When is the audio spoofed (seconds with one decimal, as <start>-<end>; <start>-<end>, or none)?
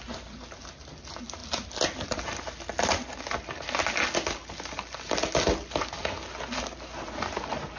none